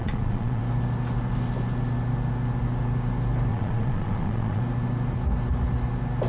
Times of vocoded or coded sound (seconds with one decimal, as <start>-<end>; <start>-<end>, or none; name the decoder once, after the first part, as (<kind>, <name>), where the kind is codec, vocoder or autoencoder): 0.0-0.6 (vocoder, Vocos); 3.5-4.6